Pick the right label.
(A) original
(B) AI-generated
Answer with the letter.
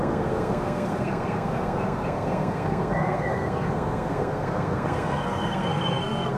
B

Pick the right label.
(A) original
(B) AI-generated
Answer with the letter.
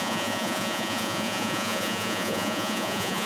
B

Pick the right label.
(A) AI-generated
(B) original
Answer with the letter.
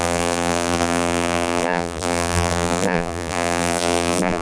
A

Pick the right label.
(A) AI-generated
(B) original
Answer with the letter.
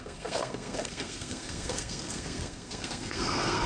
A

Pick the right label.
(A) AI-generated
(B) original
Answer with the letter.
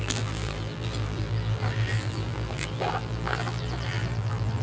A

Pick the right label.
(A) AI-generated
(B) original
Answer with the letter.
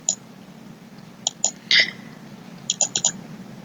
B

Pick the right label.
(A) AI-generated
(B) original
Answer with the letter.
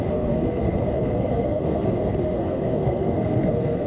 A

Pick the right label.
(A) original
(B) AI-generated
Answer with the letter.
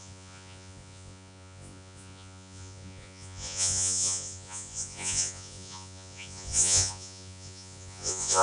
B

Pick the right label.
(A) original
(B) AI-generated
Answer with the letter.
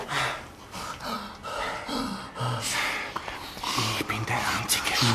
A